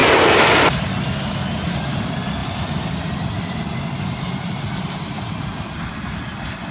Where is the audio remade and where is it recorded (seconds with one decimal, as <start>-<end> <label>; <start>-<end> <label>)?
0.0-0.9 remade; 0.9-2.4 recorded; 2.4-4.7 remade; 4.7-6.7 recorded